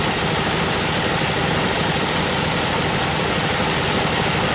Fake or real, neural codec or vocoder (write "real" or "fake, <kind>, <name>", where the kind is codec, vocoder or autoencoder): real